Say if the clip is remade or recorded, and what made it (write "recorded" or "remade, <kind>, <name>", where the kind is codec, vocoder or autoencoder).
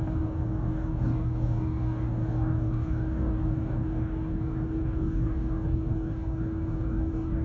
remade, codec, DAC